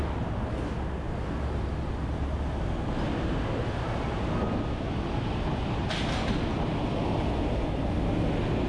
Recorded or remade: recorded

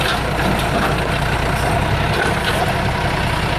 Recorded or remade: recorded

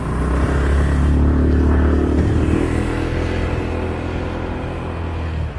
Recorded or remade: recorded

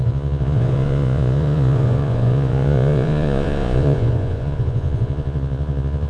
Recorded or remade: remade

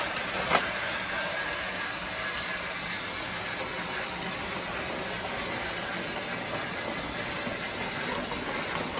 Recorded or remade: recorded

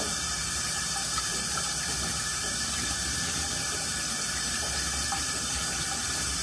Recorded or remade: remade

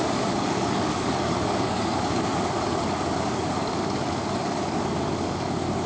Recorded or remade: remade